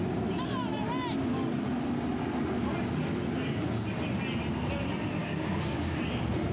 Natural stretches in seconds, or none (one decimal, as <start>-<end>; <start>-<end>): 0.0-5.2; 6.0-6.5